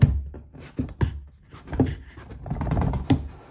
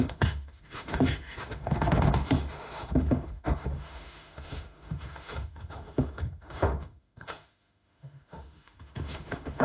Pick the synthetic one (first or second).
second